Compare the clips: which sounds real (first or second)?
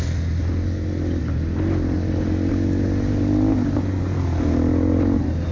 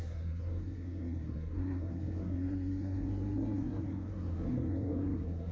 first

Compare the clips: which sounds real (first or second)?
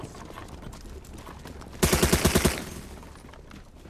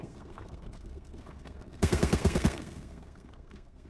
first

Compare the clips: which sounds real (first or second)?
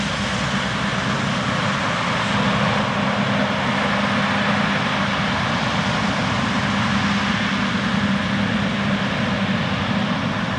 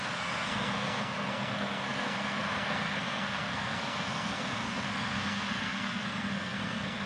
first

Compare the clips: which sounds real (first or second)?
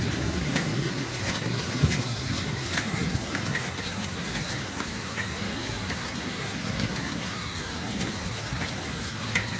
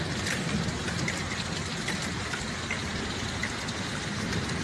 second